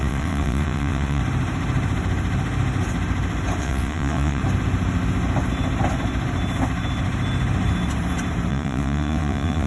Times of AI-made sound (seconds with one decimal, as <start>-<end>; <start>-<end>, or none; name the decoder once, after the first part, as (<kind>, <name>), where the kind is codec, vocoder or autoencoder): 0.0-1.2 (vocoder, WaveNeXt); 3.6-4.4; 8.5-9.7